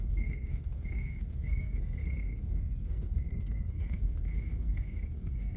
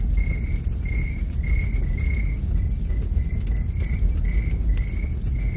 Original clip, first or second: second